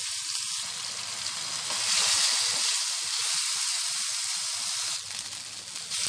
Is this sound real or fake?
real